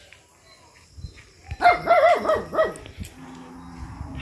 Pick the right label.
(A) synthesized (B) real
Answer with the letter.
B